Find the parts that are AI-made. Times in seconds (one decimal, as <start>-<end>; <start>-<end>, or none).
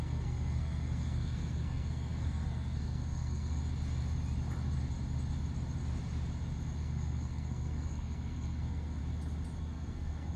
0.0-3.6; 6.8-9.0; 9.6-10.4